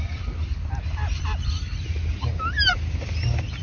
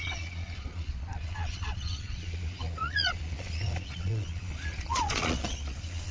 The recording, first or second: first